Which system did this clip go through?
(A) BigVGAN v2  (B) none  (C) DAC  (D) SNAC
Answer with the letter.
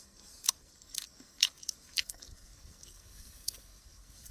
D